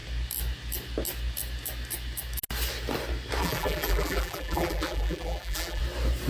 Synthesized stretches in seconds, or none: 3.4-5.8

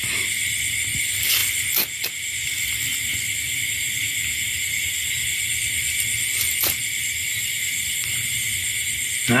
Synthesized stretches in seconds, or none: 7.3-8.6

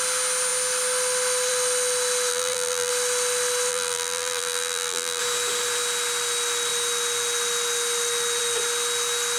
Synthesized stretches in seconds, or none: 2.3-2.9; 3.7-5.2